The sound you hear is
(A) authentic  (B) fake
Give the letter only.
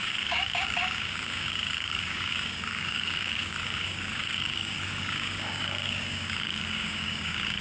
B